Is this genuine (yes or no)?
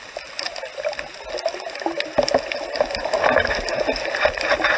yes